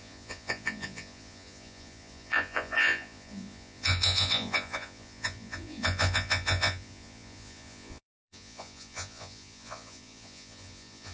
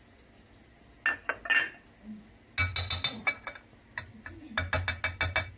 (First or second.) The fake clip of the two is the first